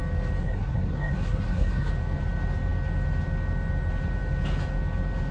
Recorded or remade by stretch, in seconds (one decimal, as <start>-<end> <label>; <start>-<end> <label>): 0.0-0.4 recorded; 0.4-1.9 remade; 1.9-5.3 recorded